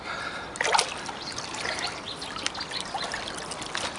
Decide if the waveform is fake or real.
real